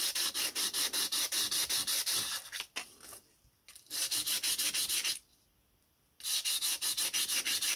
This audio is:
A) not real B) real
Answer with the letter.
B